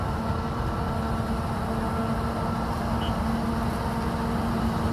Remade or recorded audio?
recorded